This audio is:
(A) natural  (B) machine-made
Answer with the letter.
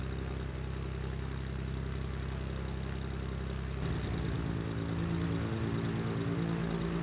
A